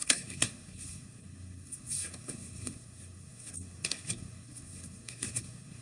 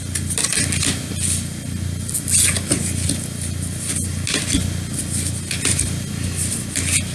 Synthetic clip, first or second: first